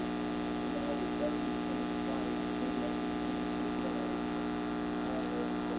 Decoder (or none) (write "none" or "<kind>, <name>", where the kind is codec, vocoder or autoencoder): none